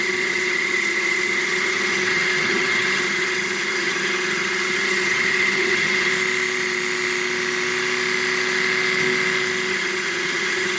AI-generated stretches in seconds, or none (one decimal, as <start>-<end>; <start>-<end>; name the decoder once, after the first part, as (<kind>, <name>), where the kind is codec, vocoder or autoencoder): 0.0-6.1 (vocoder, HiFi-GAN); 9.7-10.8